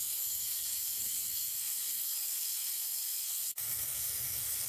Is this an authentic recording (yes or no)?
no